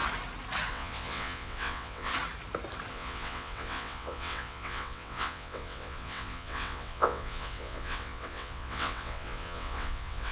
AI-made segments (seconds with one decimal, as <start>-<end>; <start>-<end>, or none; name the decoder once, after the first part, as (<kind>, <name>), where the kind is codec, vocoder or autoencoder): 0.7-2.1 (vocoder, WaveNeXt); 2.9-10.3